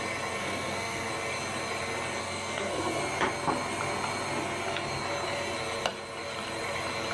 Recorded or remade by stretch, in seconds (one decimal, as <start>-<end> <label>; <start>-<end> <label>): 0.0-0.4 recorded; 0.4-1.1 remade; 1.1-2.2 recorded; 2.2-3.0 remade; 3.0-7.1 recorded